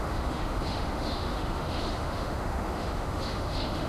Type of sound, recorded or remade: remade